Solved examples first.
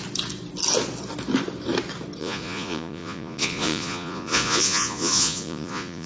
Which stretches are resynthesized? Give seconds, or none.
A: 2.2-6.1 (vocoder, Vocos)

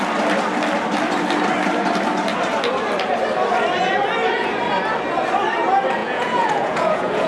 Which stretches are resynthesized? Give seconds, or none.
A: 6.0-7.3 (vocoder, Vocos)

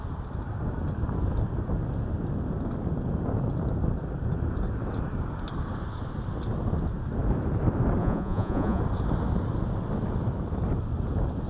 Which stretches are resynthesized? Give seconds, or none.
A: 8.0-8.8 (vocoder, Vocos)

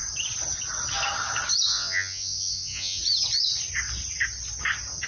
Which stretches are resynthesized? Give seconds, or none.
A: 1.7-3.0 (vocoder, Vocos)

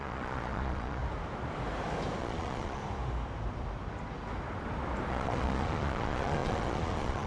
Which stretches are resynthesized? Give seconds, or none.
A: 0.0-1.0 (vocoder, Vocos); 2.2-2.8; 5.1-7.3

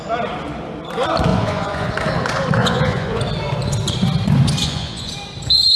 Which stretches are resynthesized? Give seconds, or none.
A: 1.3-1.9 (vocoder, Vocos); 2.6-3.2; 4.6-5.1

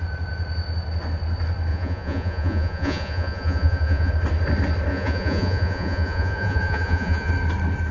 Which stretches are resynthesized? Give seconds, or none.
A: 1.7-4.1 (vocoder, Vocos); 4.9-7.3

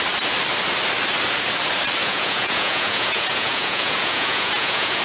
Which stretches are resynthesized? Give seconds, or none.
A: 2.0-5.0 (vocoder, Vocos)